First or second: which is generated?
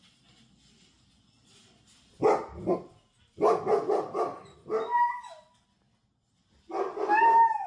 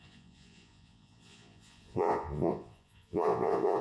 second